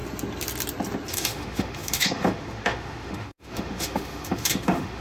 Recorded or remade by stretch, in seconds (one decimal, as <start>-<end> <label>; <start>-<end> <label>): 0.0-1.1 recorded; 1.1-5.0 remade